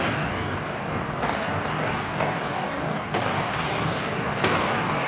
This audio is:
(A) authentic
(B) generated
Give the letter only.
B